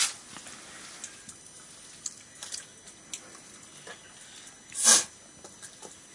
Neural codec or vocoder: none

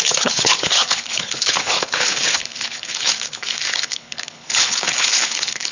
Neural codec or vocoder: codec, HILCodec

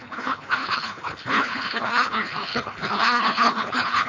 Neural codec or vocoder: codec, HILCodec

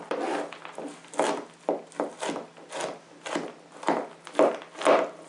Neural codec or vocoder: none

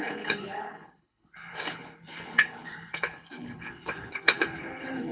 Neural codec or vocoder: codec, HILCodec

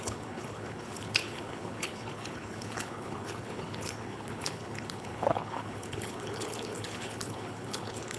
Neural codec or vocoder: codec, HILCodec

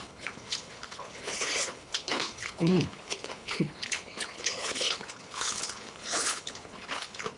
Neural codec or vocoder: codec, HILCodec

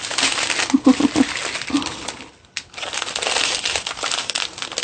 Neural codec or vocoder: none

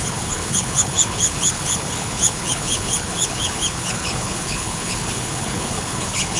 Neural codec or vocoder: codec, HILCodec